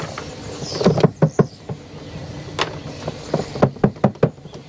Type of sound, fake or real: real